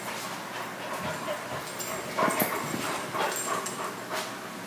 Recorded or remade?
recorded